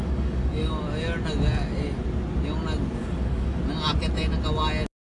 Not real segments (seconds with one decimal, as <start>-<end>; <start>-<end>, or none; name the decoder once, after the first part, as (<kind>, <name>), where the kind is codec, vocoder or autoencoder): 0.0-0.7 (codec, DAC); 3.0-3.6